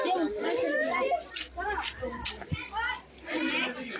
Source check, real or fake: fake